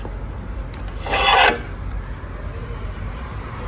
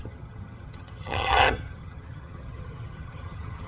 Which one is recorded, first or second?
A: first